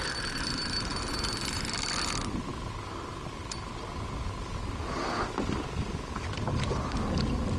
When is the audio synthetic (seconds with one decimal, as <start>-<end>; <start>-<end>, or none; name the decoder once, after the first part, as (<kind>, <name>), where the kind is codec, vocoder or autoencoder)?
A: none